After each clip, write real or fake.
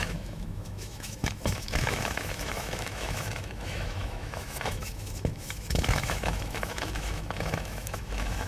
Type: fake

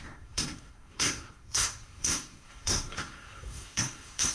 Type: fake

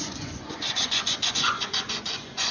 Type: fake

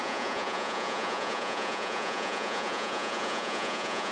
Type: fake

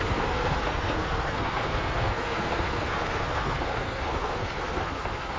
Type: fake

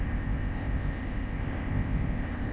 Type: fake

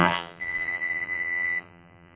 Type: fake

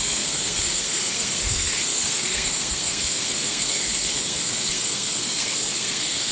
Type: fake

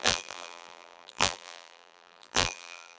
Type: fake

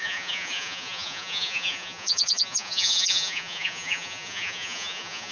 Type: fake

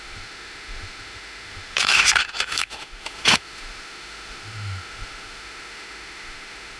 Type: fake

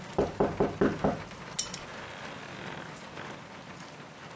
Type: real